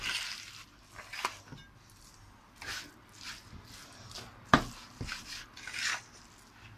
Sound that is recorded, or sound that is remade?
recorded